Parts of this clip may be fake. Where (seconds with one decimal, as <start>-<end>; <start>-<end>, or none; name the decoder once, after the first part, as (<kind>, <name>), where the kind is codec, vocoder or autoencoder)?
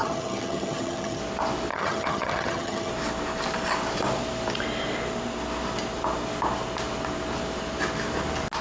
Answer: 0.0-1.2 (vocoder, HiFi-GAN); 1.7-2.9